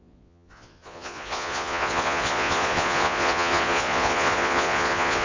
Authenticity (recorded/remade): remade